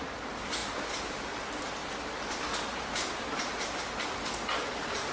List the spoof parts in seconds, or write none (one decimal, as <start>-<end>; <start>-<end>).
none